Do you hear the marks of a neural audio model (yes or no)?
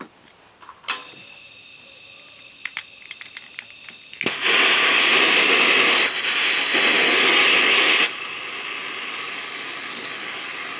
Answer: no